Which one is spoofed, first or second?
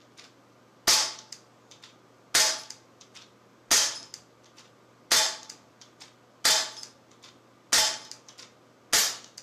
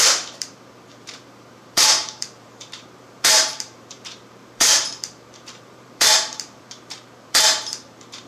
second